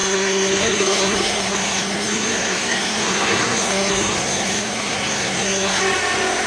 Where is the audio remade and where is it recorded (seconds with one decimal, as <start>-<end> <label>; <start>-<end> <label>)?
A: 0.0-5.8 remade; 5.8-6.5 recorded

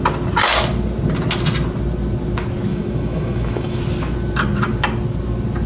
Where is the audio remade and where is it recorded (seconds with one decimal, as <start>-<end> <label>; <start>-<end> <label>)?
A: 0.0-2.7 recorded; 2.7-3.8 remade; 3.8-5.7 recorded